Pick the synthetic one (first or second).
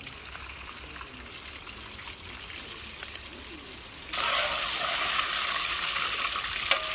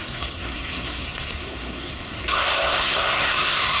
second